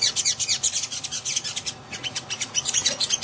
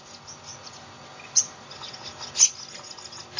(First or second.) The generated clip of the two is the first